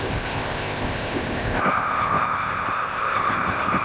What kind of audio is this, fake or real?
fake